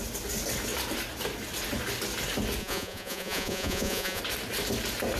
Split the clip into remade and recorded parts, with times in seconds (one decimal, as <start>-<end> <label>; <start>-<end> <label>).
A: 0.0-2.6 recorded; 2.6-4.2 remade; 4.2-5.2 recorded